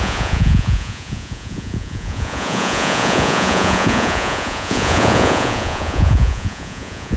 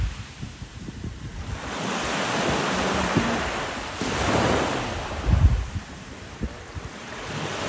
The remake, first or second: first